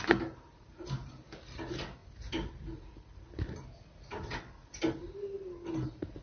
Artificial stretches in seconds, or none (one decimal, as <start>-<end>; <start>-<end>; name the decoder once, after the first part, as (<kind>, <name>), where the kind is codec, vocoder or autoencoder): none